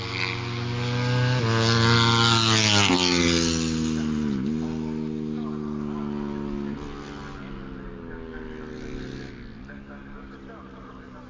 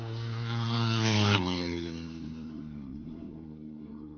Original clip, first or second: first